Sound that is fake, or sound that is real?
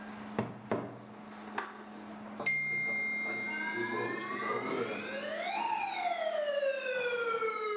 real